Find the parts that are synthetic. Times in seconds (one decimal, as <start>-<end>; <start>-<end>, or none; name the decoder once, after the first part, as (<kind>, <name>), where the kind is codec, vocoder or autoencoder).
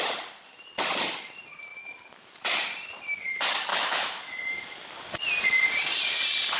1.7-2.3 (autoencoder, DAC-VAE); 3.7-4.9